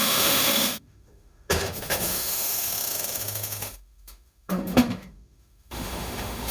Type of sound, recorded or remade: remade